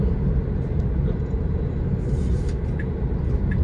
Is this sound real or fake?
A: real